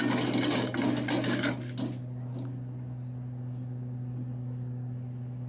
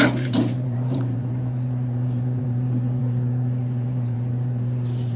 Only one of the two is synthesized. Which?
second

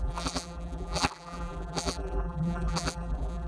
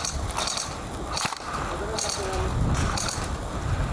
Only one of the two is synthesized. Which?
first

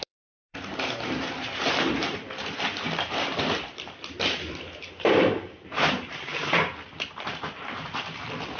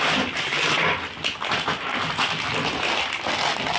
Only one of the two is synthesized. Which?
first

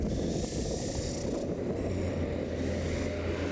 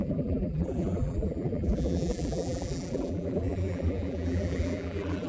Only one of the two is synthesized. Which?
second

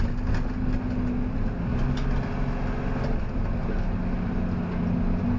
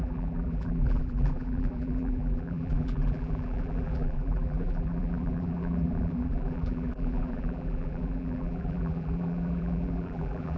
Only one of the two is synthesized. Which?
second